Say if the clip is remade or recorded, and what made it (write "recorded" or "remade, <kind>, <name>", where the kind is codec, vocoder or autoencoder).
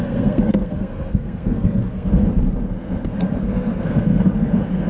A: remade, codec, SNAC